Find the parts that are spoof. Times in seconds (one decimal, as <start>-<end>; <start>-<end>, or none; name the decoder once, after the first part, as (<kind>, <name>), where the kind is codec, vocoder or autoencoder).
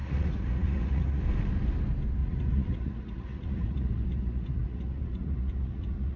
0.0-1.2 (vocoder, Vocos); 2.2-6.2